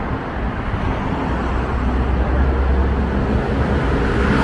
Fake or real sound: real